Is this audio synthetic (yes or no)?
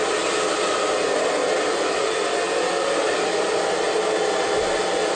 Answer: no